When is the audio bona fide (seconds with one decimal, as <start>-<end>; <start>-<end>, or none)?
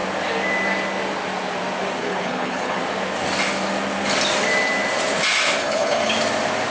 0.0-2.0; 2.8-5.6; 6.1-6.7